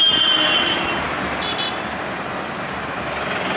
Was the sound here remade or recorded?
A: recorded